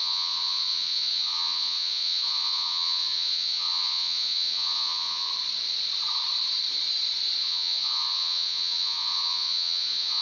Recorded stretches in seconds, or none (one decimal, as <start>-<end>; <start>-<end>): 5.3-7.4